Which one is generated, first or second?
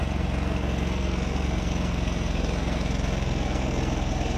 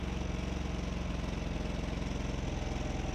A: first